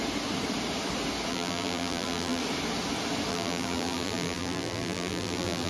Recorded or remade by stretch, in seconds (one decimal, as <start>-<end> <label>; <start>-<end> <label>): 0.0-1.3 recorded; 1.3-2.4 remade; 2.4-3.3 recorded; 3.3-5.7 remade